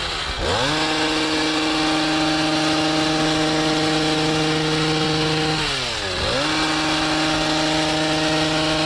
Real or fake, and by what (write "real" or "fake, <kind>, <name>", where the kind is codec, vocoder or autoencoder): real